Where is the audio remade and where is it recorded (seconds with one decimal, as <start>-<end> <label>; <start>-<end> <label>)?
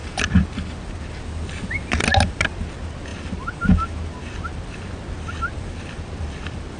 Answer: 0.0-6.8 recorded